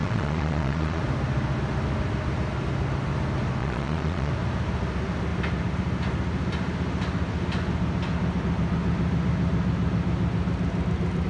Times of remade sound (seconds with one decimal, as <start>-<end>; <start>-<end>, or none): 0.0-1.0; 3.6-4.3